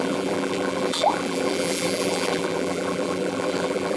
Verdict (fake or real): fake